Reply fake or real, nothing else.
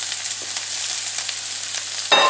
real